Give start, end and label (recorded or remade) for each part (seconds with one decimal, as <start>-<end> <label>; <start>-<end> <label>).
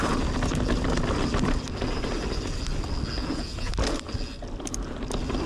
0.0-3.2 recorded; 3.2-3.7 remade; 3.7-5.5 recorded